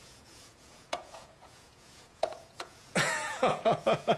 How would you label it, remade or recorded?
remade